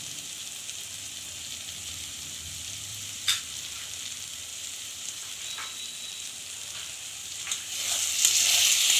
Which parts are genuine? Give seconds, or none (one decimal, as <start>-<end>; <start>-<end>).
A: 0.0-2.9; 3.4-4.5; 5.3-7.2; 8.0-9.0